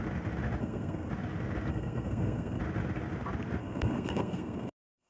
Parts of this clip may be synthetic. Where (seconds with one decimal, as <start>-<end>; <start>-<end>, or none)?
0.6-1.1; 1.7-2.6; 3.6-5.1